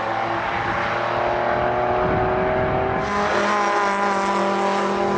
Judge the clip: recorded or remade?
recorded